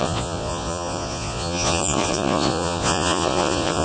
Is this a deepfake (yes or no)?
yes